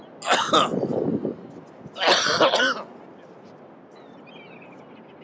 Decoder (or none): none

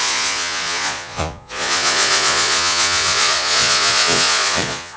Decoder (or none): vocoder, Vocos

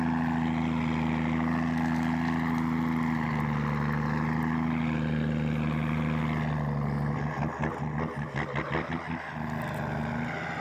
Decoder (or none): none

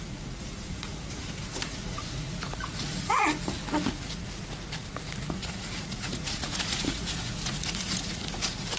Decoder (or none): vocoder, Vocos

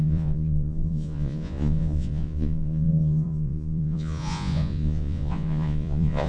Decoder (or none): vocoder, Vocos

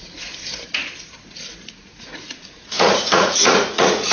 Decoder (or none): vocoder, Vocos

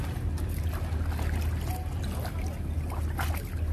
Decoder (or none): none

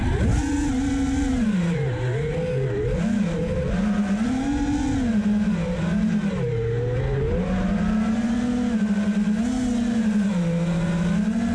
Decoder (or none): none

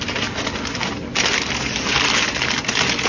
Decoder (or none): none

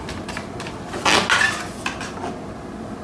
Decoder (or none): none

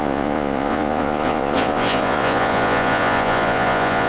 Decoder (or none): vocoder, Vocos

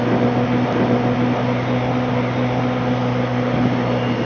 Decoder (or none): none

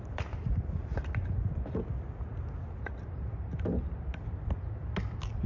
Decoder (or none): none